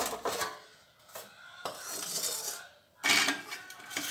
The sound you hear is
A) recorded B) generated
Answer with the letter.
A